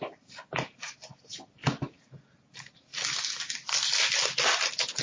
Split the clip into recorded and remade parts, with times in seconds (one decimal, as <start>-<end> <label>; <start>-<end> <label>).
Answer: 0.0-5.0 recorded